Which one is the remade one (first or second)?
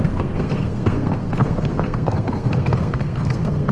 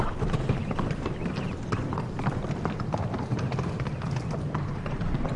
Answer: first